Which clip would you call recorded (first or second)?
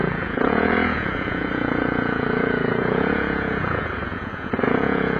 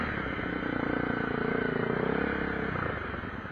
second